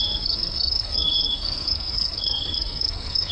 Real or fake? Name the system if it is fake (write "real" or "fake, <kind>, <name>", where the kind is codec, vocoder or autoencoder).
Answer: fake, codec, SNAC